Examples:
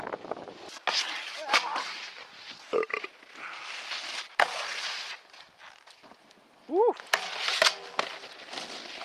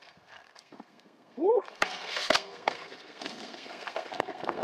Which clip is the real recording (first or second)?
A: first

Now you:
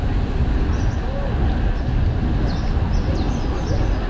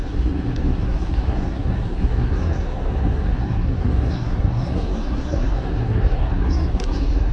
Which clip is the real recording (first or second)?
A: first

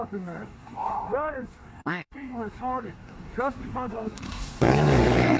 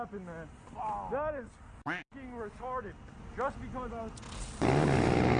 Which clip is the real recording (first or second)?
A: second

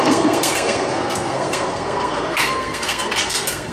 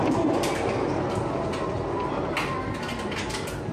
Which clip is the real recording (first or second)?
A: second